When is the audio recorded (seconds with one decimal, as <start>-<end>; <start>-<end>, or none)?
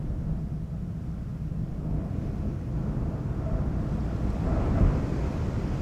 0.0-5.8